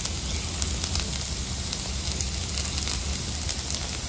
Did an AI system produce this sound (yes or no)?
no